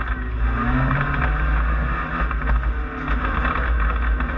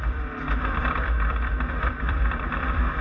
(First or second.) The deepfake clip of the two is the second